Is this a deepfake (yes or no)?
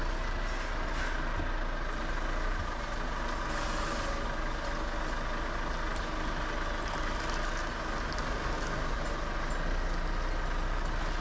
no